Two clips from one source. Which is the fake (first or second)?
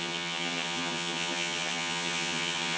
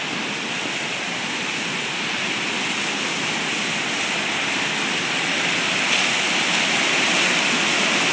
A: first